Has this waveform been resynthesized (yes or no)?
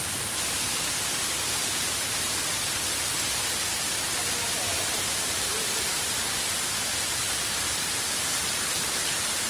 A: no